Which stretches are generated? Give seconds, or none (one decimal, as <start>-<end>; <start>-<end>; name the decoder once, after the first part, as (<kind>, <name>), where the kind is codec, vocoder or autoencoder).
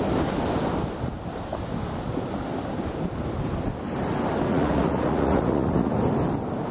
4.5-5.9 (vocoder, Vocos)